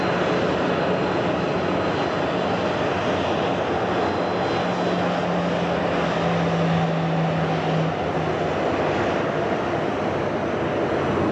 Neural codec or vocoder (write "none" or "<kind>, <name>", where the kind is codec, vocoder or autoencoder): none